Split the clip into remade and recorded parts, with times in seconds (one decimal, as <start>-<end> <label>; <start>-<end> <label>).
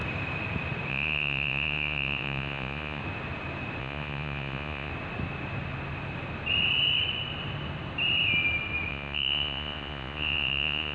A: 0.0-0.9 recorded; 0.9-3.0 remade; 3.0-3.8 recorded; 3.8-4.9 remade; 4.9-8.9 recorded; 8.9-10.9 remade